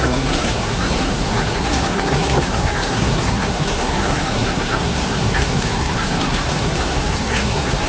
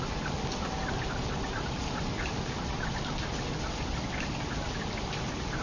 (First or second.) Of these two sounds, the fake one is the first